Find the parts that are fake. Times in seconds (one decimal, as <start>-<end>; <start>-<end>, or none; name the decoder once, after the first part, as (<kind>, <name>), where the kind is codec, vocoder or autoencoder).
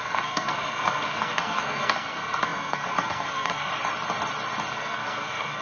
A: 0.0-3.7 (codec, SNAC); 4.7-5.6